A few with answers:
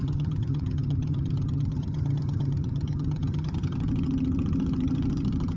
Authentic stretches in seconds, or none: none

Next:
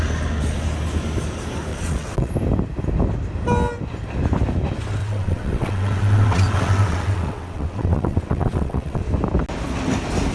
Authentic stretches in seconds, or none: 0.0-1.7; 2.3-5.0; 9.0-10.3

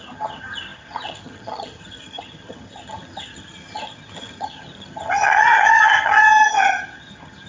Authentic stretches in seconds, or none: none

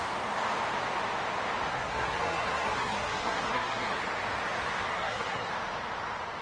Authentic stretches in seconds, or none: 0.0-1.7; 4.0-4.9; 5.5-6.4

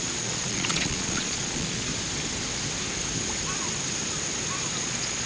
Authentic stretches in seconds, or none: 1.9-4.8

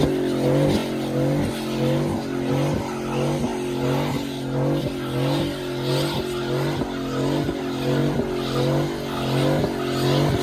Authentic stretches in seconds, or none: 0.0-10.4

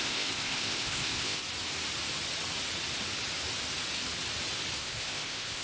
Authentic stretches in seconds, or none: 1.4-4.8